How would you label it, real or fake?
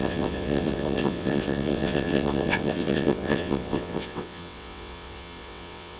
fake